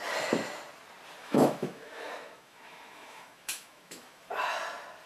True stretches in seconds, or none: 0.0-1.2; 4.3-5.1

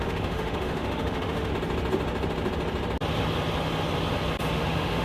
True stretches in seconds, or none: 1.5-4.5

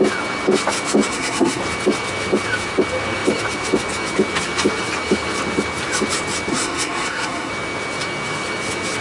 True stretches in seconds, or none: 0.0-1.1; 1.6-6.5; 7.5-9.0

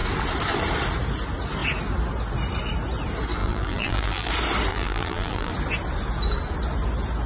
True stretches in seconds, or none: 0.0-3.4; 4.3-4.7; 5.5-7.3